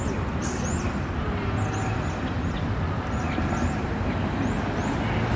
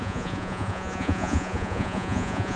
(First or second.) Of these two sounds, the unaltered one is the first